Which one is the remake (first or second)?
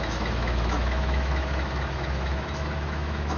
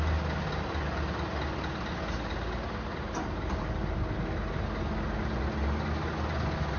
first